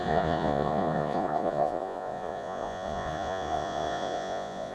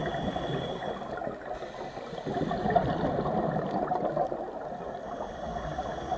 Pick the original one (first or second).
second